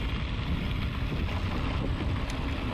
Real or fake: real